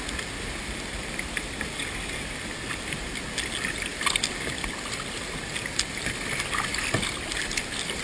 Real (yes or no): yes